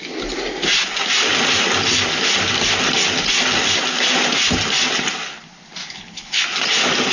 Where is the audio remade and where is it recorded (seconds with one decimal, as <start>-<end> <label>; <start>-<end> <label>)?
0.0-5.8 recorded; 5.8-6.4 remade; 6.4-7.1 recorded